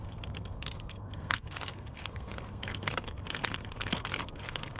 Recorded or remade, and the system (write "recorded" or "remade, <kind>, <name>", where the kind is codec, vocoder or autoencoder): remade, codec, SNAC